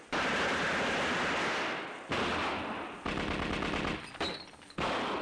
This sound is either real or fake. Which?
real